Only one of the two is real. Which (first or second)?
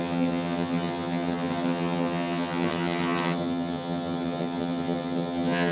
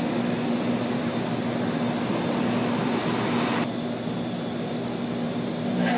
second